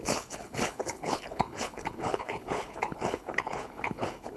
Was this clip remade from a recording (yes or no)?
yes